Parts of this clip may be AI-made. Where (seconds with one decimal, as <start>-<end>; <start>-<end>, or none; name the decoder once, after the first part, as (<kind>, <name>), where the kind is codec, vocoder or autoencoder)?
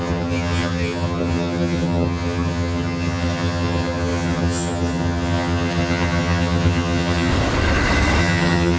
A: 0.0-7.3 (vocoder, HiFi-GAN); 8.2-8.8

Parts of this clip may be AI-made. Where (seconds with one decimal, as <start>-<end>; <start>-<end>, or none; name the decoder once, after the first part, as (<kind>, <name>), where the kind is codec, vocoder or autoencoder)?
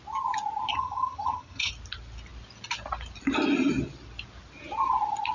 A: 0.7-1.7 (vocoder, HiFi-GAN)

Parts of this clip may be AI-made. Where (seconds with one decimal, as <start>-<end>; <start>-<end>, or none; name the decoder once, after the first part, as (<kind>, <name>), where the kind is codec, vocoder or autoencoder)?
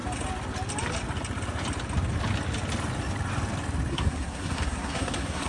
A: 3.9-5.5 (codec, SNAC)